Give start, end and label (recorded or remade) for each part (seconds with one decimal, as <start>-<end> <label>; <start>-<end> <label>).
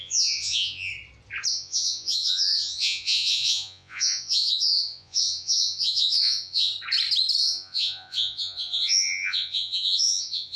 0.0-0.9 remade; 0.9-1.5 recorded; 1.5-6.7 remade; 6.7-7.4 recorded; 7.4-10.6 remade